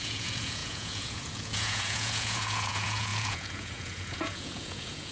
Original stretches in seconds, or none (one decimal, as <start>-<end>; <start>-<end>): none